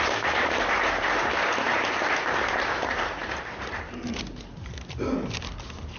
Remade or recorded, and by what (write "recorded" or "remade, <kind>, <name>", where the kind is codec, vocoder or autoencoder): remade, vocoder, BigVGAN v2